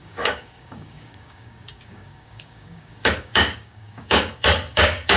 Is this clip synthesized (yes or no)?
yes